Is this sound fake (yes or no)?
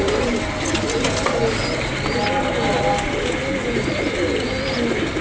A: no